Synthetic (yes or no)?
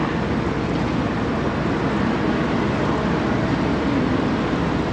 no